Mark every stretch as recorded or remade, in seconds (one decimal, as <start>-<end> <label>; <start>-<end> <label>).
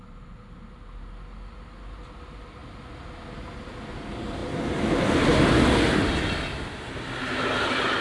0.0-8.0 recorded